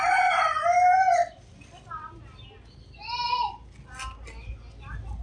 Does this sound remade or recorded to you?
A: recorded